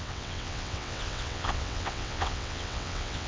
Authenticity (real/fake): fake